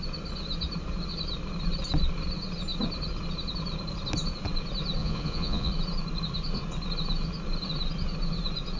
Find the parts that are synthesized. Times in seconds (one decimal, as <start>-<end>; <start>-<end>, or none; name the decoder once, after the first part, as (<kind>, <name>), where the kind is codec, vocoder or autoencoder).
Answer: 5.0-5.7 (vocoder, Vocos)